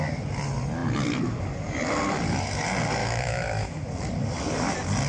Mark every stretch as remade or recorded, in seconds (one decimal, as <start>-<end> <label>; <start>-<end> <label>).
0.0-3.0 recorded; 3.0-3.8 remade; 3.8-5.1 recorded